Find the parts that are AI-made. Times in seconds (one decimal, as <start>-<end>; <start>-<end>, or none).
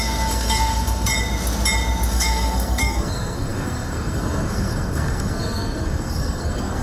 0.0-1.1; 2.1-6.8